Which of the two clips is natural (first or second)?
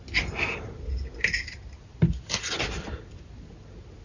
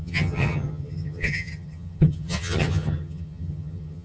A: first